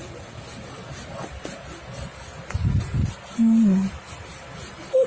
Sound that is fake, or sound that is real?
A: real